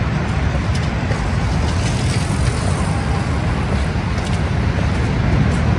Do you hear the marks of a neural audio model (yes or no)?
no